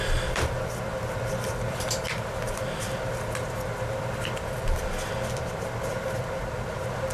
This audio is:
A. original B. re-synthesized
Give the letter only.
B